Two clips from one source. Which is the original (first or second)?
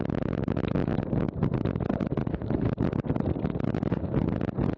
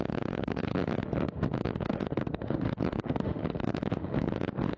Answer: first